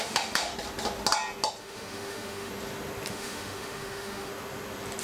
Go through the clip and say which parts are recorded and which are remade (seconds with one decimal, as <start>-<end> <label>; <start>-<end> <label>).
0.0-0.5 remade; 0.5-1.6 recorded; 1.6-2.5 remade; 2.5-3.1 recorded; 3.1-4.3 remade; 4.3-5.0 recorded